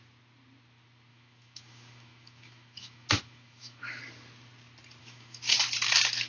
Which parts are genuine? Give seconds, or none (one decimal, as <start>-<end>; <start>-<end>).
0.0-1.1; 4.0-5.0; 5.6-6.3